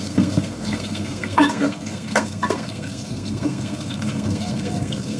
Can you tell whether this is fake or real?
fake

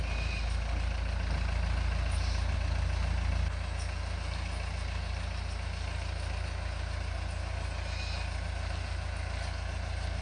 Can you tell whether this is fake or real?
real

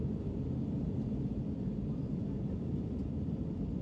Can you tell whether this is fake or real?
real